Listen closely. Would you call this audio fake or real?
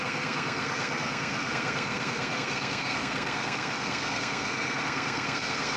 fake